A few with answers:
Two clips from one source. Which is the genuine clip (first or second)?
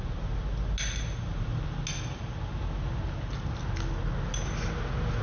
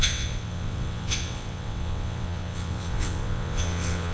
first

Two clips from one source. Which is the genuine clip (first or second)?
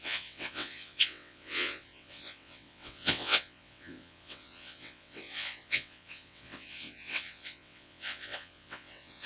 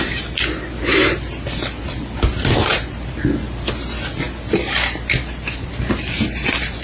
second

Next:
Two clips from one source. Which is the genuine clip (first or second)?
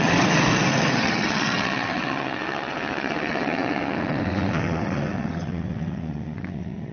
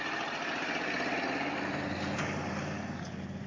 second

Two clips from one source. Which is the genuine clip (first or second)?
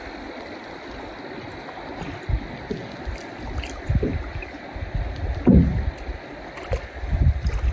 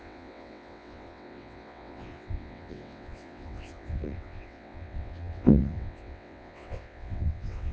first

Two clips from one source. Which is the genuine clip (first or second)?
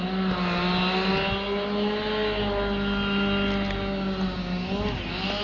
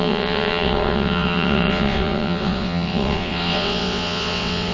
first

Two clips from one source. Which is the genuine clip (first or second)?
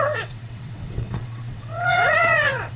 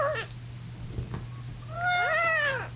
second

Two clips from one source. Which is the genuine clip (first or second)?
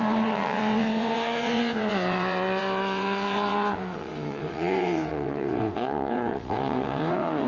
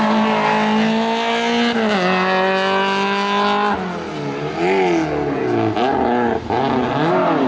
second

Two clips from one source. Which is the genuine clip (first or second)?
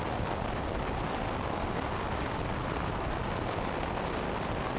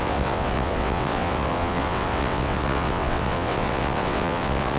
first